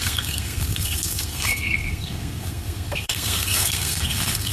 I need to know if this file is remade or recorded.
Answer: remade